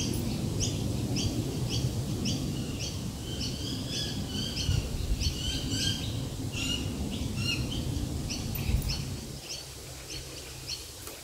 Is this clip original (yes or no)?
yes